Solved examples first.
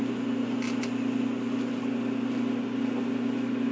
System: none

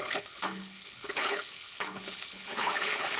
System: codec, HILCodec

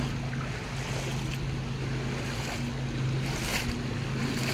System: none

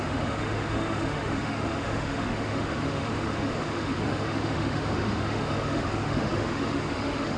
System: autoencoder, DAC-VAE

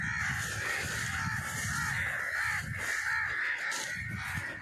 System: none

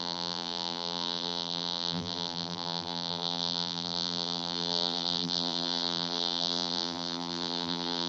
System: vocoder, BigVGAN v2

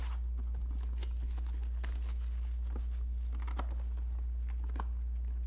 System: none